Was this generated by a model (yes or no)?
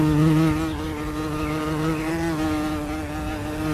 no